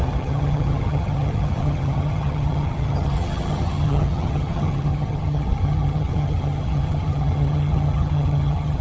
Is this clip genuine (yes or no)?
no